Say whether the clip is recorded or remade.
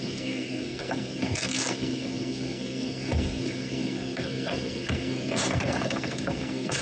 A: remade